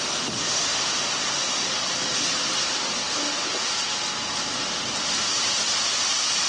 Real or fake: real